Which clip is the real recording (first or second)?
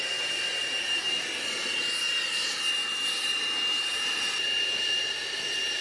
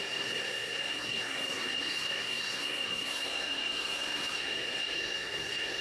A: first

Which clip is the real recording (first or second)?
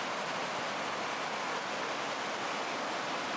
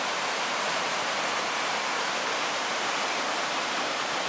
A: first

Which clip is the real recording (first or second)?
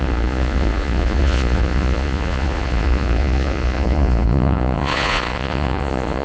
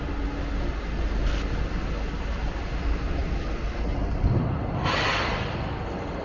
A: second